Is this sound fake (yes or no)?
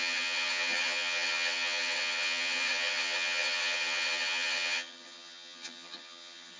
yes